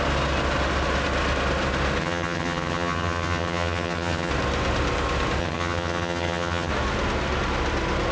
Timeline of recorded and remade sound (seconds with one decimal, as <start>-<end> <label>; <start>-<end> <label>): 0.0-2.0 recorded; 2.0-4.3 remade; 4.3-5.4 recorded; 5.4-6.7 remade; 6.7-8.1 recorded